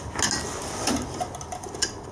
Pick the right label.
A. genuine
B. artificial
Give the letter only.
A